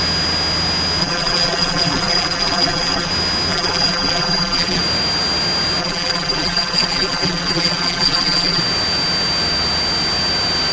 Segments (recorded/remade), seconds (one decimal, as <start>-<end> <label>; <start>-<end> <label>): 0.0-1.0 recorded; 1.0-3.1 remade; 3.1-3.5 recorded; 3.5-4.8 remade; 4.8-5.8 recorded; 5.8-8.6 remade; 8.6-10.7 recorded